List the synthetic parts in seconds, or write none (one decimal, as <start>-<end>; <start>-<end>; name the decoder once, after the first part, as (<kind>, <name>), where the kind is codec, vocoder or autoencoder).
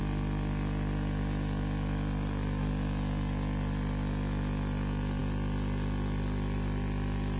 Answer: none